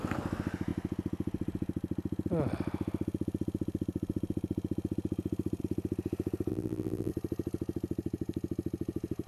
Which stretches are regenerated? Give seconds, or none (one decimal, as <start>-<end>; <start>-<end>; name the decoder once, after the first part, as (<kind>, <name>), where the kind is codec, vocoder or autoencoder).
6.5-7.1 (vocoder, BigVGAN v2)